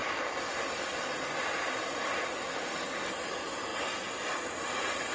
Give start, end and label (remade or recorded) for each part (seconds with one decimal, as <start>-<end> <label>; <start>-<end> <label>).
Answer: 0.0-5.1 recorded